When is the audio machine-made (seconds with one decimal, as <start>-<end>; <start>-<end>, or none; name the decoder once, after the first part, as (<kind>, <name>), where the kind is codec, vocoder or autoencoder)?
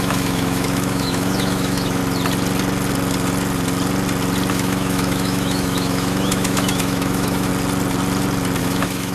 0.0-2.0 (autoencoder, DAC-VAE); 4.5-7.5; 8.6-9.1